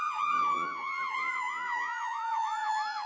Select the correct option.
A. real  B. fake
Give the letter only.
B